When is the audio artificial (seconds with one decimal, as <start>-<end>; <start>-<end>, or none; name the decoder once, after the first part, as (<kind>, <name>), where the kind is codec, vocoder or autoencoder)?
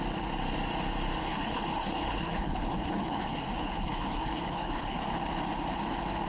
1.2-5.0 (codec, HILCodec)